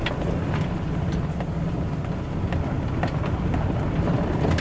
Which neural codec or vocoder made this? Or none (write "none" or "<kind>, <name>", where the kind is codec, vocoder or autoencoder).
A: none